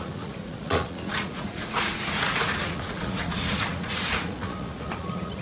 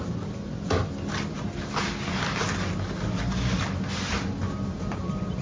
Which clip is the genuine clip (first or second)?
second